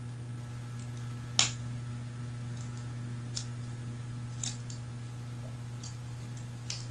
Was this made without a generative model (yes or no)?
yes